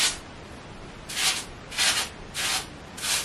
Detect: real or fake real